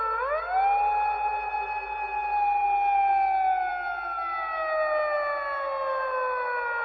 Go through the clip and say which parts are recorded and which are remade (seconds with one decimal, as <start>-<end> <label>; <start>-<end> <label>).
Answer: 0.0-6.8 recorded